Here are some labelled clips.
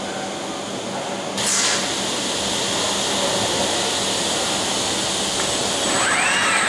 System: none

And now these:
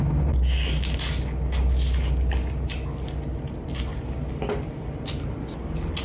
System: none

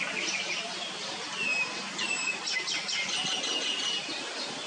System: none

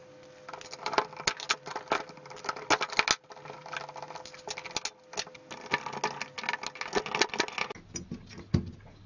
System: none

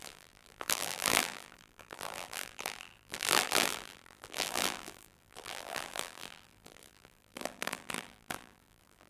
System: vocoder, BigVGAN v2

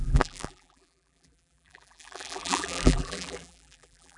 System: vocoder, BigVGAN v2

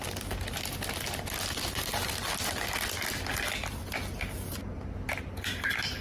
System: none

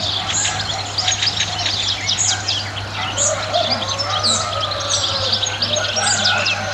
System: none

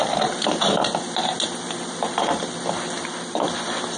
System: vocoder, BigVGAN v2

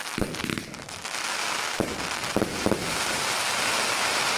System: none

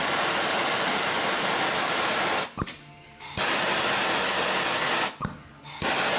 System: none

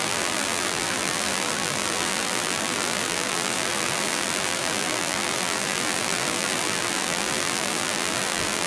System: vocoder, BigVGAN v2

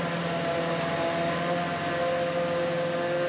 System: none